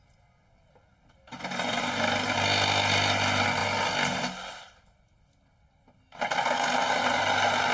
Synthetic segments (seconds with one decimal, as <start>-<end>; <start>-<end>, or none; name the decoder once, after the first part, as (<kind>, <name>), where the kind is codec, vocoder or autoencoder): none